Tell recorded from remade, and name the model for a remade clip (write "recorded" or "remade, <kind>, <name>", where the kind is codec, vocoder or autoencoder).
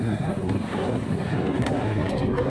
remade, codec, SNAC